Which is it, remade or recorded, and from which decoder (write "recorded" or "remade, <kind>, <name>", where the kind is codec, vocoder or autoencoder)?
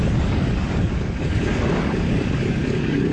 remade, codec, DAC